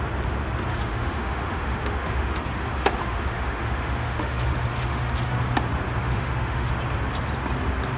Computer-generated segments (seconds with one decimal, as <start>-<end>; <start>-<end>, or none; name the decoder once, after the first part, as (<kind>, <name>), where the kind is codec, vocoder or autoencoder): 0.7-5.4 (autoencoder, DAC-VAE); 6.0-6.7